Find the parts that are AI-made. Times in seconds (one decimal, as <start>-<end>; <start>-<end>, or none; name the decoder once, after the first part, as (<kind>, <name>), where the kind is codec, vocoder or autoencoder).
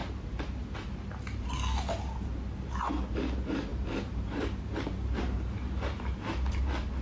0.0-0.5 (vocoder, BigVGAN v2); 3.7-6.5